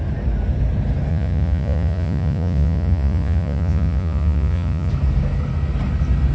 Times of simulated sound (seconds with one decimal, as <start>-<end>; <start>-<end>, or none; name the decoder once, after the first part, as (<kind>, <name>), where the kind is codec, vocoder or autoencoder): 1.1-4.9 (vocoder, Vocos)